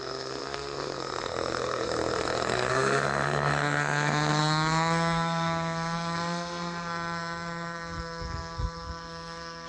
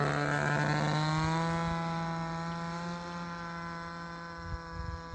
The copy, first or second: first